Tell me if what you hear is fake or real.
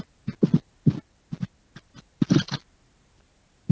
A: real